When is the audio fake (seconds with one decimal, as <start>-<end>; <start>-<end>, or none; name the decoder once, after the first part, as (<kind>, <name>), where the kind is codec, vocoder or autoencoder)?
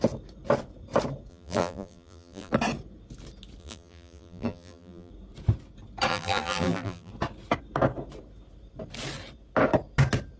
1.3-2.5 (vocoder, BigVGAN v2); 3.6-5.1; 6.1-7.1